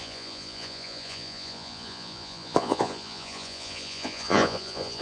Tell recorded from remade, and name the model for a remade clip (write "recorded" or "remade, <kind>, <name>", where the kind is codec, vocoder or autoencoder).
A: remade, vocoder, Vocos